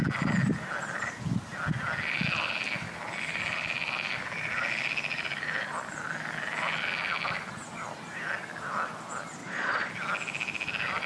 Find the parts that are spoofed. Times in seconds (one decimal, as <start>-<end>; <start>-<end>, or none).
9.4-9.9